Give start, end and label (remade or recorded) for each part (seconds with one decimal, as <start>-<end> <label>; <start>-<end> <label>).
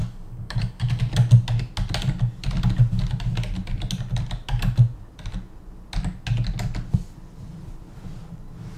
0.0-1.0 remade; 1.0-8.8 recorded